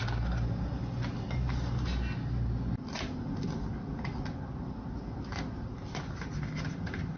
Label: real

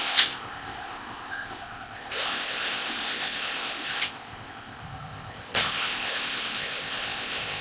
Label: fake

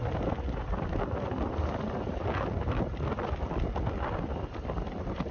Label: real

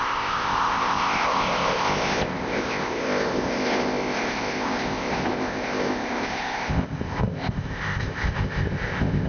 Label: fake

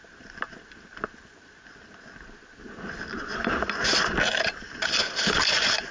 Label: real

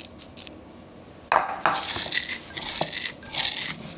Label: real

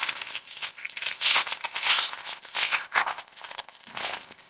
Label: fake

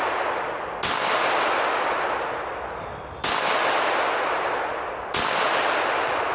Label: real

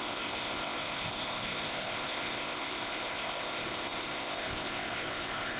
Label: fake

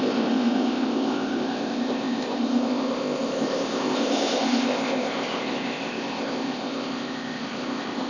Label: fake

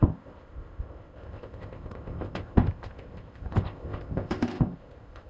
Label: fake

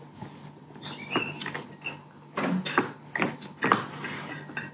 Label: real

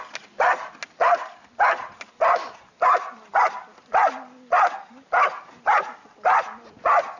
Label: real